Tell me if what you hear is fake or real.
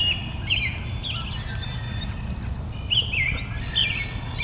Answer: real